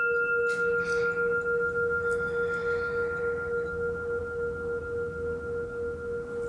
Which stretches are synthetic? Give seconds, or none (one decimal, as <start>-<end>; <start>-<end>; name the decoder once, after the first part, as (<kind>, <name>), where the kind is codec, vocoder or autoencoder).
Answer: none